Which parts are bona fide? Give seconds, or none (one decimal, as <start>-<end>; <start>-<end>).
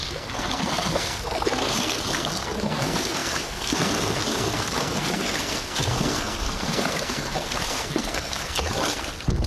none